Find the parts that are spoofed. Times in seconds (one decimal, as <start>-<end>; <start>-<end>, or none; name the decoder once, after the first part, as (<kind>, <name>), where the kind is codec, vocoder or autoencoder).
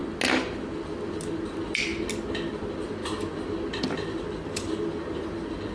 none